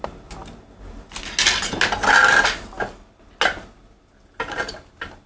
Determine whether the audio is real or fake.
real